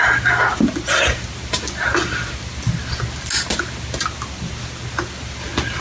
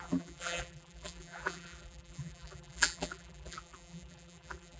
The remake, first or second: second